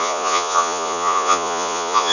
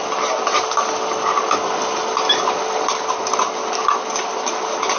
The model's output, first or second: first